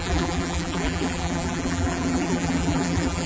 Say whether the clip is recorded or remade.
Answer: remade